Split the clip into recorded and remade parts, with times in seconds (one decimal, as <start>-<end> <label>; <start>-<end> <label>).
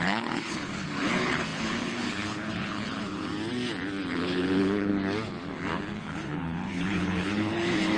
0.0-3.3 remade; 3.3-4.1 recorded; 4.1-4.9 remade; 4.9-6.0 recorded; 6.0-8.0 remade